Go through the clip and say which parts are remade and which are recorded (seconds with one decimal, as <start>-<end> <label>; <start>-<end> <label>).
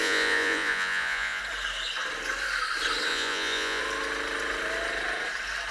0.0-1.4 remade; 1.4-3.1 recorded; 3.1-3.8 remade; 3.8-5.7 recorded